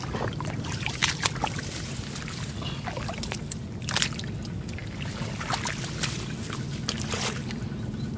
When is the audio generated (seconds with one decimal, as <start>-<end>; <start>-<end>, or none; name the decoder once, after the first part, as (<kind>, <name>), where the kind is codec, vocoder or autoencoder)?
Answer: none